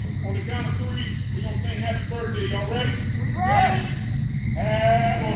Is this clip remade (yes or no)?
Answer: no